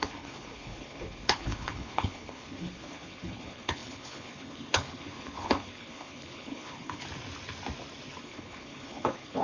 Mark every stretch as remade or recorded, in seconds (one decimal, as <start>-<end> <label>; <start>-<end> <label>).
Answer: 0.0-7.0 remade; 7.0-8.2 recorded; 8.2-9.4 remade